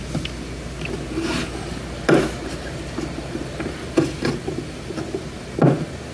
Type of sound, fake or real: real